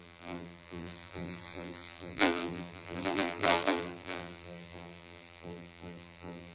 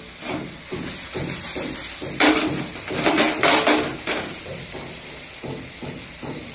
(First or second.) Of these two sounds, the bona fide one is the second